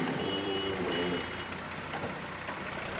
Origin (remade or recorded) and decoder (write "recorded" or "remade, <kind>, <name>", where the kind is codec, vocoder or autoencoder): remade, vocoder, BigVGAN v2